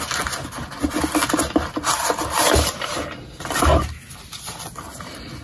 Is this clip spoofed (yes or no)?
no